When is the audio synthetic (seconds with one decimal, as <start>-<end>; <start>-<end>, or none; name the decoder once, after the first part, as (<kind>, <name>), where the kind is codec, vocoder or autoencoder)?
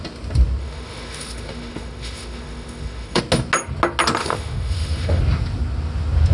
0.6-3.2 (autoencoder, DAC-VAE); 4.2-5.2